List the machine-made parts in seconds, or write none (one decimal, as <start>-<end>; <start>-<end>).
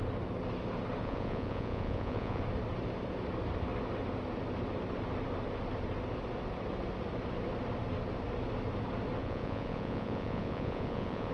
1.0-2.4; 9.2-11.3